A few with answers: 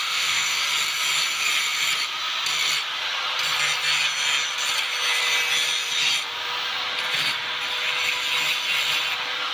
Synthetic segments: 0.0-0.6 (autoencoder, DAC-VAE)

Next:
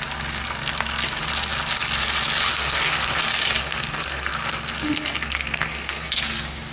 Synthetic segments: 2.5-3.2 (codec, SNAC); 3.6-6.2

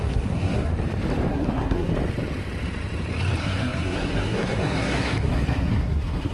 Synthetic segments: 0.0-0.7 (codec, SNAC); 1.3-1.9; 3.4-6.3

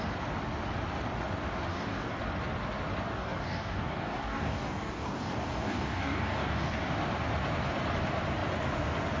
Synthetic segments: 1.7-2.2 (codec, DAC); 3.1-6.8

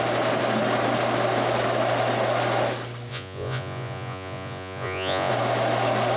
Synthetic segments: 3.1-5.3 (vocoder, Vocos)